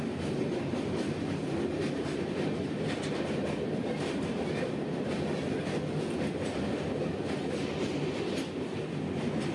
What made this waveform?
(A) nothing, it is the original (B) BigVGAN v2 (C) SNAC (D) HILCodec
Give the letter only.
A